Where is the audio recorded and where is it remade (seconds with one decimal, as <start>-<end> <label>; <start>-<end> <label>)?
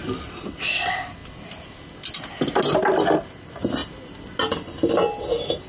0.0-5.7 recorded